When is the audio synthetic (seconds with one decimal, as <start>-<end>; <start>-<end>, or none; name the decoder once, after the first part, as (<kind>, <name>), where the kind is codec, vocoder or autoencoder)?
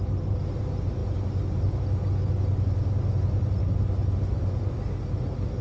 none